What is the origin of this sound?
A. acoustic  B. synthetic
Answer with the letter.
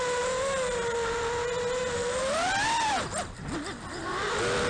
A